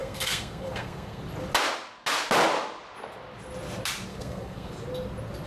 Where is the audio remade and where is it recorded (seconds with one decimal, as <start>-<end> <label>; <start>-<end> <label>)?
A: 0.0-1.2 remade; 1.2-4.1 recorded; 4.1-4.7 remade; 4.7-5.5 recorded